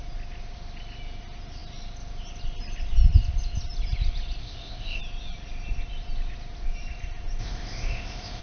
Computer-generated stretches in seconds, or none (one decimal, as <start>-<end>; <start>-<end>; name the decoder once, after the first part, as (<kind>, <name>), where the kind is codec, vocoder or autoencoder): 4.4-5.0 (codec, ZipCodec); 7.4-8.4